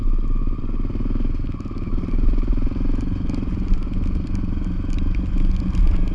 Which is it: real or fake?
real